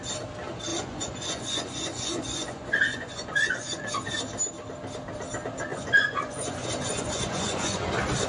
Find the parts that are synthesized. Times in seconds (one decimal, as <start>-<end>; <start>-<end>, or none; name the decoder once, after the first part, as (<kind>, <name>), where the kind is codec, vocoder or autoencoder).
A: 0.7-3.9 (vocoder, Vocos); 5.7-7.9